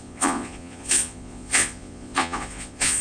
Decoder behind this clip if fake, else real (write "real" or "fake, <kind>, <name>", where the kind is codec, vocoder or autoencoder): fake, vocoder, Vocos